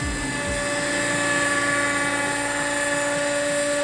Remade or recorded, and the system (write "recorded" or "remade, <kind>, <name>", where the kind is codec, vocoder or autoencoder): recorded